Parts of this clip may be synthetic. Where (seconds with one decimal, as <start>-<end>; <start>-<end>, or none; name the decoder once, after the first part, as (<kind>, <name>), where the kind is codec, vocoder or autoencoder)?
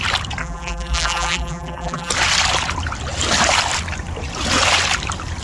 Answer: 0.4-2.1 (vocoder, BigVGAN v2)